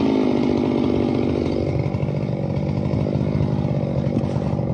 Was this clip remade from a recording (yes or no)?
no